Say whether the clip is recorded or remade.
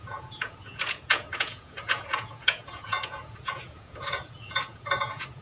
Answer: remade